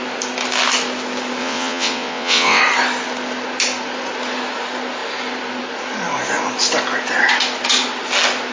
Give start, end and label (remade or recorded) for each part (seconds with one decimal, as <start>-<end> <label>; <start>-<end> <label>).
0.0-1.4 recorded; 1.4-2.6 remade; 2.6-8.5 recorded